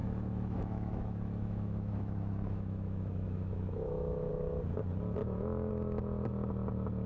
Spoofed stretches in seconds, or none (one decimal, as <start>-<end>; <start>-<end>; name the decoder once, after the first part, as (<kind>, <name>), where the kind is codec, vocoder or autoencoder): 0.0-4.3 (autoencoder, DAC-VAE); 5.2-5.7